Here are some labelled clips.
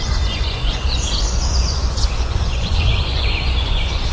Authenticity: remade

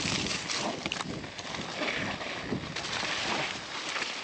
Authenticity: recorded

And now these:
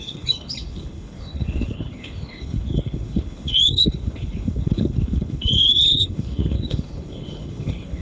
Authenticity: remade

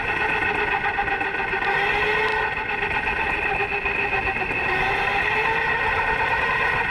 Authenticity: recorded